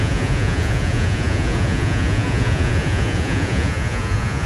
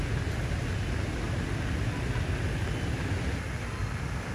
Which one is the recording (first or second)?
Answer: second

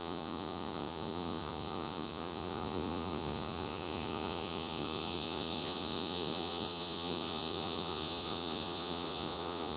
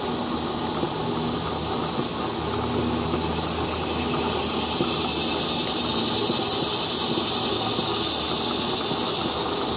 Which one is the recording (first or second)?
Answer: second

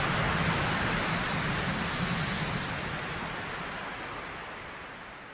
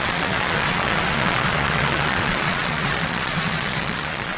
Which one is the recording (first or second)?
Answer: first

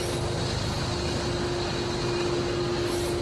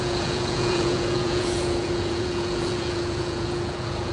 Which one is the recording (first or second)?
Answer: first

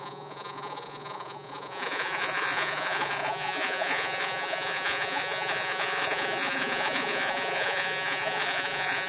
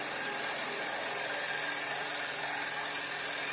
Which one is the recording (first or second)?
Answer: second